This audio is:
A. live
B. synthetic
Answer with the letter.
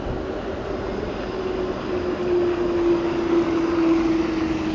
A